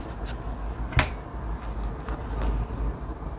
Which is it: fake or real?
real